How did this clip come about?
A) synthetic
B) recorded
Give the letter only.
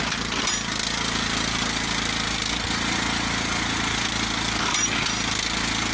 B